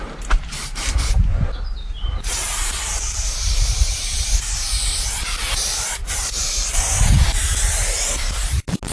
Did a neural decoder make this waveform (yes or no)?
yes